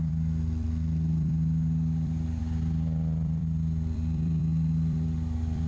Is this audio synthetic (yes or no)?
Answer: yes